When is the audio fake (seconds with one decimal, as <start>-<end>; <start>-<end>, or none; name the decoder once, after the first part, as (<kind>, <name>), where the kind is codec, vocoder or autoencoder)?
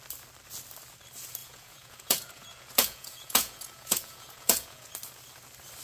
1.4-4.9 (vocoder, Vocos)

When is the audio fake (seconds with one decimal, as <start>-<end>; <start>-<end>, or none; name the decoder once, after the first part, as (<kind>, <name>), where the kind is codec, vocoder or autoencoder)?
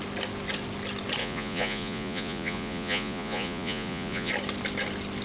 1.2-4.3 (vocoder, Vocos)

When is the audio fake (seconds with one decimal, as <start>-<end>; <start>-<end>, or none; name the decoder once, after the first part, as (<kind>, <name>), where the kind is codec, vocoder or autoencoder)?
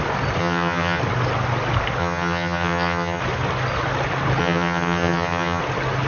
0.4-1.0 (vocoder, HiFi-GAN); 2.0-3.2; 4.4-5.6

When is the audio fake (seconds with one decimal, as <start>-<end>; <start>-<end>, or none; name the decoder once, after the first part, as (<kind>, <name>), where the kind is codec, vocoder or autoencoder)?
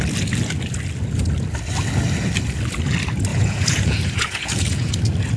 3.3-4.9 (vocoder, Vocos)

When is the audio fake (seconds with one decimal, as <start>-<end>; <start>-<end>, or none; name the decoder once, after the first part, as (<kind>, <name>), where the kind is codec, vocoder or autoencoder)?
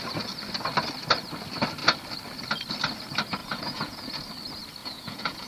3.4-4.1 (vocoder, Vocos); 4.8-5.5